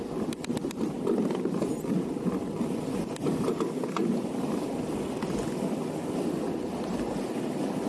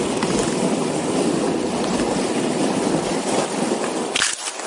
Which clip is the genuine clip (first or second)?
first